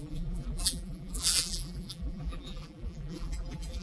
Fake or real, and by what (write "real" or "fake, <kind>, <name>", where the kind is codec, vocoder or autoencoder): fake, vocoder, BigVGAN v2